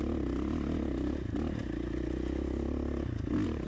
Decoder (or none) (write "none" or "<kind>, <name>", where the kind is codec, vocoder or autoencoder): none